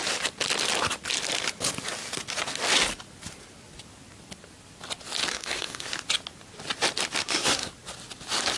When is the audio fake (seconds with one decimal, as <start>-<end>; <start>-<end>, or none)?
5.3-5.9; 7.2-7.7